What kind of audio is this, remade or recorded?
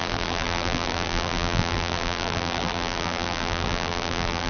remade